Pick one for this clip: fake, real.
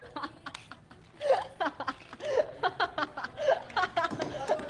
real